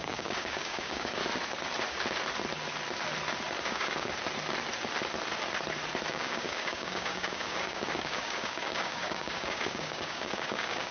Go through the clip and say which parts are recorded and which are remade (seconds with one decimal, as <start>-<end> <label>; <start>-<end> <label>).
0.0-1.2 remade; 1.2-3.6 recorded; 3.6-4.1 remade; 4.1-6.1 recorded; 6.1-10.9 remade